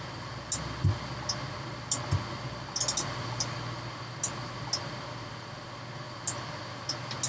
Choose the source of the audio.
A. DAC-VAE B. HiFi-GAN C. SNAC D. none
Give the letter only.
D